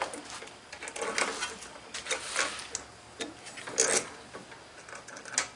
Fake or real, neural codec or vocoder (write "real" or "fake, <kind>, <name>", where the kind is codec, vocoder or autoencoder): real